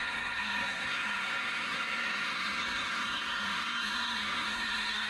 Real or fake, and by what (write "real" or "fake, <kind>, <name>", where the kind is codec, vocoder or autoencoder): fake, codec, SNAC